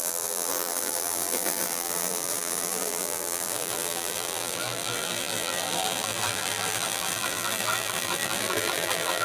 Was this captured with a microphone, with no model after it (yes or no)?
no